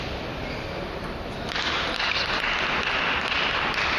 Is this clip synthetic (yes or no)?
no